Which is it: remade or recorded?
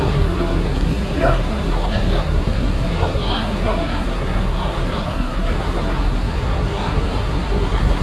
remade